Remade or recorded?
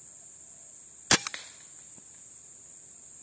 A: recorded